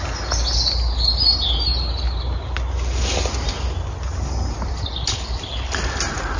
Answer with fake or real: real